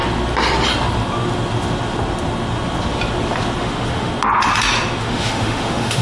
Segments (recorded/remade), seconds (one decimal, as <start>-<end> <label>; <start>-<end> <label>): 0.0-3.6 recorded; 3.6-4.1 remade; 4.1-5.0 recorded; 5.0-6.0 remade